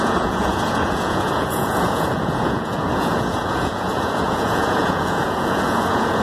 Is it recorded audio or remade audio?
remade